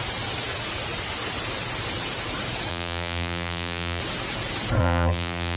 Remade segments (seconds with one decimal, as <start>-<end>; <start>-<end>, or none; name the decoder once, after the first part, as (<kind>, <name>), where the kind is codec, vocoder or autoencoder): 2.7-4.0 (vocoder, BigVGAN v2); 4.8-5.6